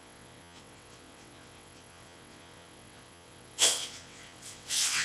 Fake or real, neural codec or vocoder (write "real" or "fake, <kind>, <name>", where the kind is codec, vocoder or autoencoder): fake, vocoder, WaveNeXt